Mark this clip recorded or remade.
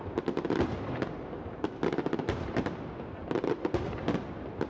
recorded